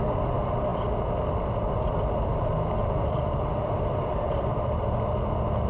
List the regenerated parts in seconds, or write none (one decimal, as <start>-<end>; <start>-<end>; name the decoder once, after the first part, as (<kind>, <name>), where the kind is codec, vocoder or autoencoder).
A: none